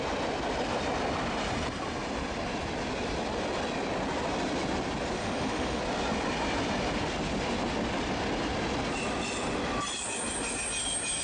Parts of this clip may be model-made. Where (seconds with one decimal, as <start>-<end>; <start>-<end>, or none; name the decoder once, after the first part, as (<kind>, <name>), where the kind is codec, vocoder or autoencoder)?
5.2-5.8 (autoencoder, DAC-VAE)